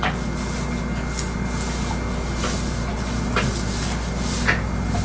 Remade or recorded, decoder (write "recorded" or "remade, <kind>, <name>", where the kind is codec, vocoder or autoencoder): recorded